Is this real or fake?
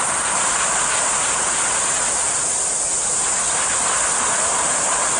real